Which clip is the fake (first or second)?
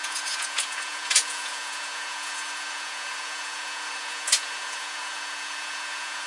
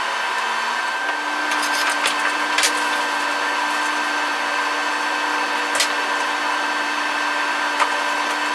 first